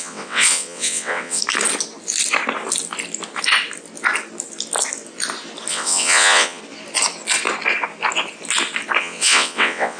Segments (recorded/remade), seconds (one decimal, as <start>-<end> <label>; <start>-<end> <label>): 0.0-1.4 remade; 1.4-5.7 recorded; 5.7-6.6 remade; 6.6-9.0 recorded; 9.0-10.0 remade